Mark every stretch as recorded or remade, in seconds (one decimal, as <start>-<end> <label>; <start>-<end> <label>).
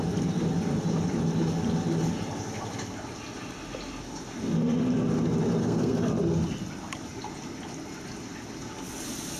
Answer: 0.0-5.6 recorded; 5.6-6.1 remade; 6.1-9.4 recorded